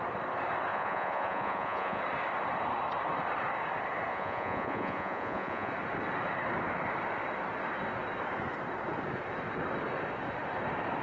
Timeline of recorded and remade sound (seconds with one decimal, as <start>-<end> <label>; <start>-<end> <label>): 0.0-0.7 recorded; 0.7-2.0 remade; 2.0-4.1 recorded; 4.1-5.7 remade; 5.7-11.0 recorded